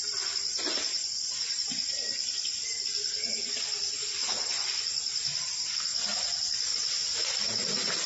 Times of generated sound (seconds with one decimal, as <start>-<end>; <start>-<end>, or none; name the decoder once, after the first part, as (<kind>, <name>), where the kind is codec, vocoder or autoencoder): 0.5-1.7 (vocoder, BigVGAN v2)